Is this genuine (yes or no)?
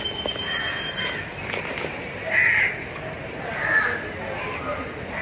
yes